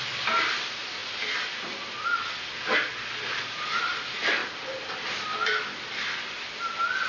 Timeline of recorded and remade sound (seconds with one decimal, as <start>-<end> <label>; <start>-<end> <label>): 0.0-7.1 recorded